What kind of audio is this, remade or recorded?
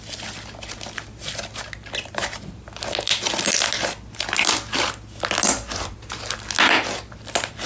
recorded